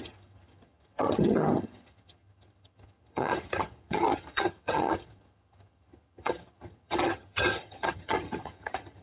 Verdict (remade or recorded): remade